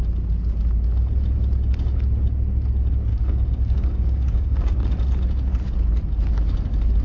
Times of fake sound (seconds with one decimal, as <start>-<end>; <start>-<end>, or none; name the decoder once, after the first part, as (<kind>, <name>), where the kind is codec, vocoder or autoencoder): 3.1-4.7 (codec, DAC)